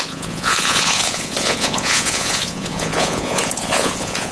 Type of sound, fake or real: fake